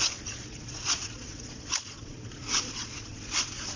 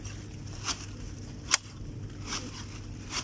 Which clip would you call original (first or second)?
second